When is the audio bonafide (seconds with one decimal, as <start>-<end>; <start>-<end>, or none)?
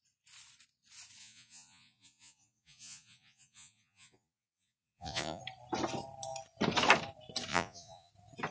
0.0-1.2; 5.4-7.5; 8.1-8.5